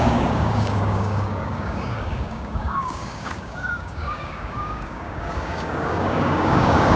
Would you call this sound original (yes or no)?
no